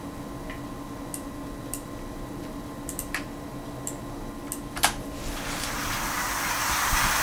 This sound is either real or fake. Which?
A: real